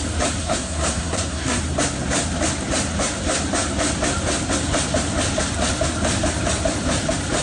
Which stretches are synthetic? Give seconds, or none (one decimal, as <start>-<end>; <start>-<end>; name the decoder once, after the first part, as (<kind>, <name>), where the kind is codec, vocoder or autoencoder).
0.4-1.6 (codec, SNAC)